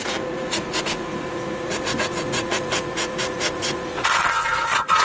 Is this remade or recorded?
remade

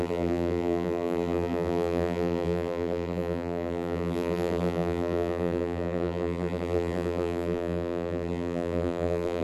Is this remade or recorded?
remade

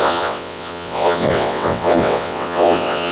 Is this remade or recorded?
remade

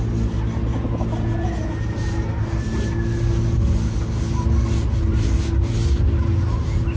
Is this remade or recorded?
recorded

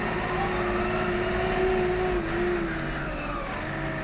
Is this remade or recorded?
recorded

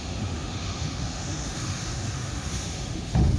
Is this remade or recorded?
remade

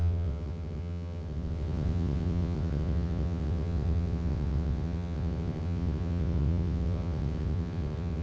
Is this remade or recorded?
remade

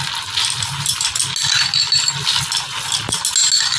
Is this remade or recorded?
recorded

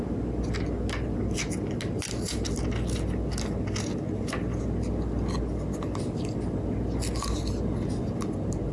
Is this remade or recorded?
recorded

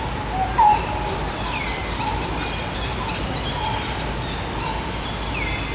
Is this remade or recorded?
recorded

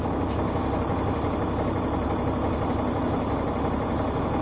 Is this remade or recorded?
recorded